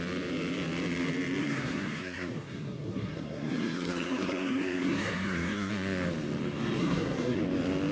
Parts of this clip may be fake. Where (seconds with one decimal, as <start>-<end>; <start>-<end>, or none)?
1.4-5.7; 6.8-7.4